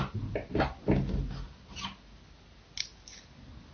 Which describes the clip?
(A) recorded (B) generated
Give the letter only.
A